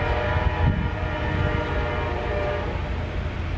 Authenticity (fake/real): real